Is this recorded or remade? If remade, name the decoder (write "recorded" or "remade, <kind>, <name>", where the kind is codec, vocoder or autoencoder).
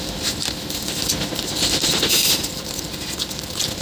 remade, vocoder, BigVGAN v2